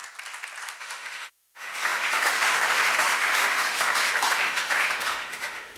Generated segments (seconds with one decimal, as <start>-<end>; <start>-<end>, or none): 0.8-5.8